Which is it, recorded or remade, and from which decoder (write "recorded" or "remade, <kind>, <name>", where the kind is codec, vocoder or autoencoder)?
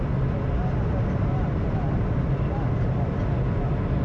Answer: recorded